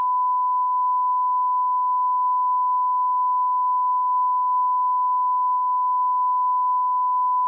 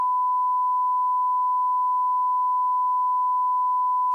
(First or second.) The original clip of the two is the second